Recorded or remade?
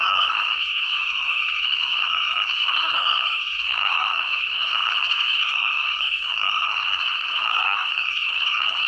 remade